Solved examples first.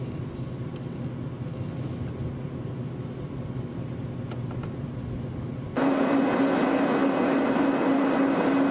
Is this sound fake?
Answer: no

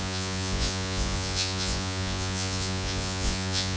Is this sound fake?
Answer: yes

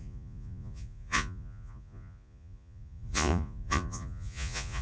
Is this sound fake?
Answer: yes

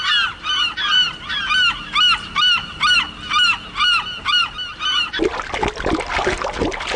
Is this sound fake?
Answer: no